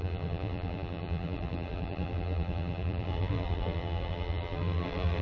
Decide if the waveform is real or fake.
fake